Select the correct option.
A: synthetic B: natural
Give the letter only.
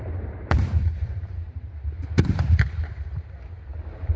A